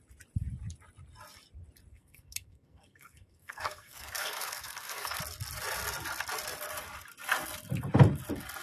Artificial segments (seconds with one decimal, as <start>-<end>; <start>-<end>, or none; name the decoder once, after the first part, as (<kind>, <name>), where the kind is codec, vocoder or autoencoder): 1.9-5.2 (codec, SNAC)